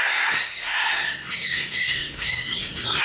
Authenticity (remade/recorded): remade